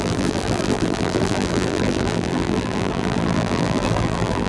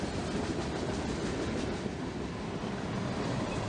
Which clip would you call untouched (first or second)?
second